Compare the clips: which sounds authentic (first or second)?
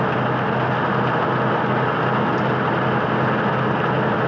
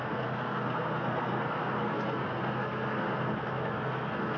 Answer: first